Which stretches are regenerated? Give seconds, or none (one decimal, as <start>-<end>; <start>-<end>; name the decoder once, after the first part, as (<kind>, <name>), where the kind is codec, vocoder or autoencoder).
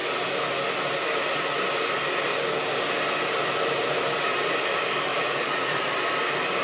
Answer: 5.1-5.8 (vocoder, Vocos)